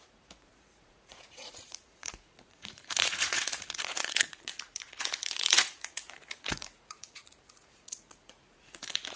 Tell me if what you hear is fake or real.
fake